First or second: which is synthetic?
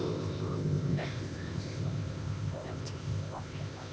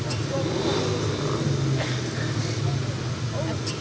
first